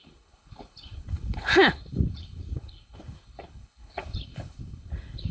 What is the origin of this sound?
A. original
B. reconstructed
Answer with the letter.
B